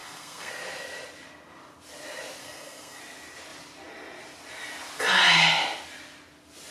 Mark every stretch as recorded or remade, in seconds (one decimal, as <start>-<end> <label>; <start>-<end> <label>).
0.0-0.5 remade; 0.5-2.4 recorded; 2.4-3.0 remade; 3.0-6.7 recorded